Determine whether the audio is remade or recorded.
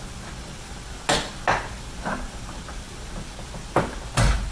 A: recorded